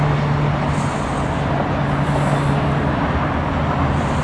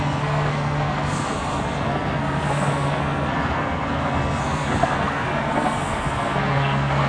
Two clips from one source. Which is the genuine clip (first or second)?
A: first